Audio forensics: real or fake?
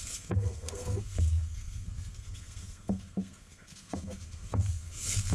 fake